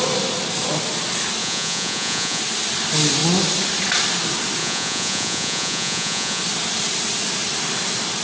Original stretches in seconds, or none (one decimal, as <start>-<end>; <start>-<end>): 0.0-1.4; 2.4-4.6; 6.4-8.2